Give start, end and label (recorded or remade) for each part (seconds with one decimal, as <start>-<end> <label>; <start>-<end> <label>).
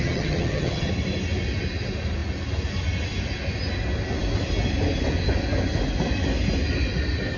0.0-0.9 remade; 0.9-7.4 recorded